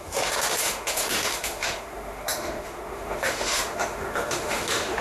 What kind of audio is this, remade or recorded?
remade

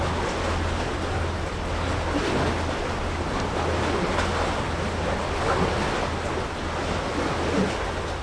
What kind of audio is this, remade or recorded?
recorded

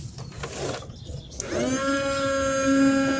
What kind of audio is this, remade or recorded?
recorded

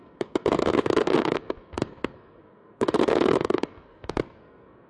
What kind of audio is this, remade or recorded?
remade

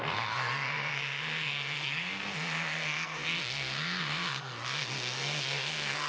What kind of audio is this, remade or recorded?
remade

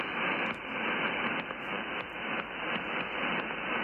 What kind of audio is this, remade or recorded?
recorded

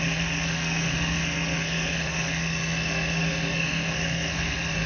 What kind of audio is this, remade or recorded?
remade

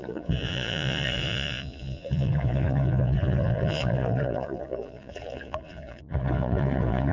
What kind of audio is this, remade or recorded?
remade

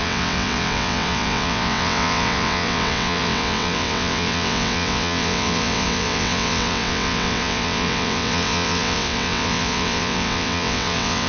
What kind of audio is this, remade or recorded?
remade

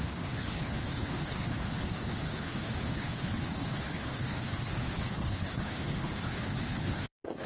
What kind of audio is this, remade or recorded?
remade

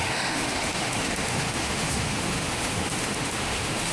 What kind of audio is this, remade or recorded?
remade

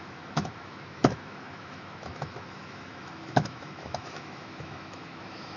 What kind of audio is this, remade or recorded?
remade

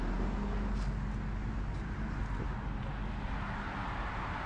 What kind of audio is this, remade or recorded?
recorded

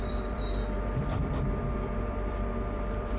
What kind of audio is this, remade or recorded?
remade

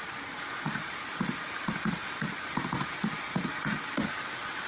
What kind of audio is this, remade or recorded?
recorded